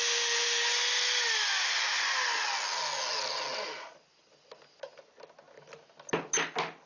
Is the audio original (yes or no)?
yes